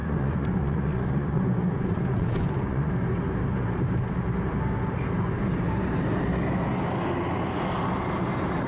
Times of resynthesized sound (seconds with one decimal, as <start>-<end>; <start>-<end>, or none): 0.0-2.9